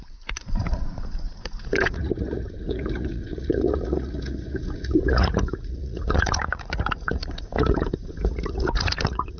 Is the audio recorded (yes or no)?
no